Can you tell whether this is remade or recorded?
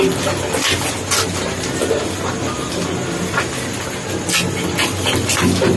recorded